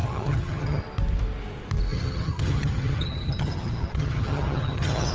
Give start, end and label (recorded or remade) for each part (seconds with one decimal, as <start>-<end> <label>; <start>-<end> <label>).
0.0-0.8 remade; 0.8-1.9 recorded; 1.9-5.1 remade